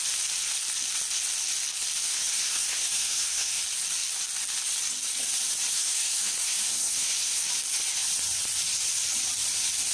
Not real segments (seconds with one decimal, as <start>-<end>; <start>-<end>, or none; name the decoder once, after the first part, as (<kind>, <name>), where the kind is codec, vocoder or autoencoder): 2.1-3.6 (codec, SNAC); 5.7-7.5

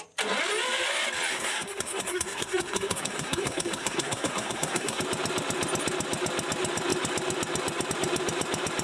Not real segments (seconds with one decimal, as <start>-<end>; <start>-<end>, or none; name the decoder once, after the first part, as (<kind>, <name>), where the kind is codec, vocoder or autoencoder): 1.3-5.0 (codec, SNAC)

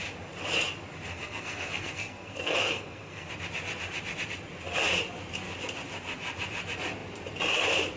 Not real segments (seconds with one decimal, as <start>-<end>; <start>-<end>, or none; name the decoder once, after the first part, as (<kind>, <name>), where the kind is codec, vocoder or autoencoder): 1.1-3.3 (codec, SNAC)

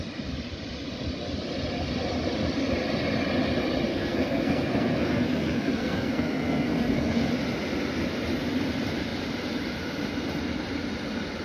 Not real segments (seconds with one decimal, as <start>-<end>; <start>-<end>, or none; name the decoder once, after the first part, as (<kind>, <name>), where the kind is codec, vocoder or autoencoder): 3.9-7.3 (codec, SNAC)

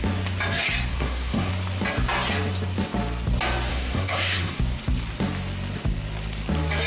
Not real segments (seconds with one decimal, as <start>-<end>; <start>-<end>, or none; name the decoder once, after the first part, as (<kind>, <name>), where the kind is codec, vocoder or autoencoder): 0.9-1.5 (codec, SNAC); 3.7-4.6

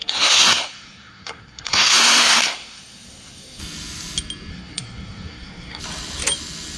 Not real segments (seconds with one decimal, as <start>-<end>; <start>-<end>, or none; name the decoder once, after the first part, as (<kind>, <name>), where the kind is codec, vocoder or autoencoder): 0.0-3.6 (codec, SNAC); 4.5-5.8

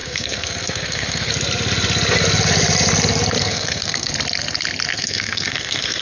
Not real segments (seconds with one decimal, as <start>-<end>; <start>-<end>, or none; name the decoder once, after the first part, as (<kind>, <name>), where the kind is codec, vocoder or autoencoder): 0.0-1.3 (codec, SNAC); 3.4-4.1; 4.9-6.0

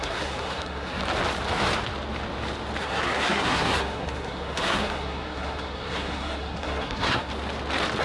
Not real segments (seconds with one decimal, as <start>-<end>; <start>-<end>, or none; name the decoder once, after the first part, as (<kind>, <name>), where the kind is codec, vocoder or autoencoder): 0.0-1.0 (codec, SNAC); 2.8-7.3